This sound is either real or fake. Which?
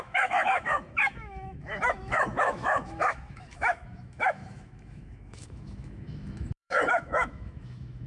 fake